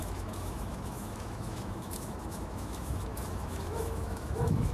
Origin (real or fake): fake